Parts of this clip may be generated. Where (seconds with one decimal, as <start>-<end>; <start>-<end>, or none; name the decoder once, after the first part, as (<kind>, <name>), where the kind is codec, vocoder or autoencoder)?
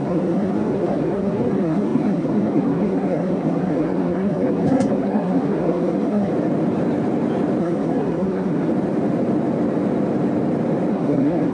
0.0-6.3 (codec, SNAC); 7.6-8.7; 10.9-11.5